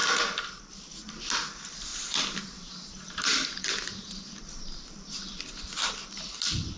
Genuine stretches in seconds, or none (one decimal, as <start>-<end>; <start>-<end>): 0.0-1.9; 4.4-6.8